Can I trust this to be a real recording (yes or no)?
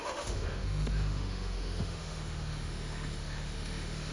no